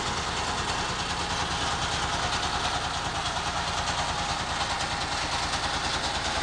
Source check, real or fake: real